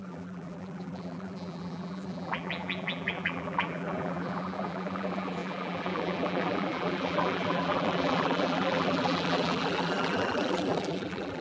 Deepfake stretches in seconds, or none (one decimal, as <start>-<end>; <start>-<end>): 0.0-11.4